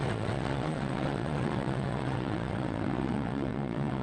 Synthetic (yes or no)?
yes